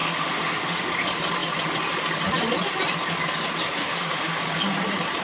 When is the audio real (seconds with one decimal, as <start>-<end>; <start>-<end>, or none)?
0.9-3.8; 4.4-5.2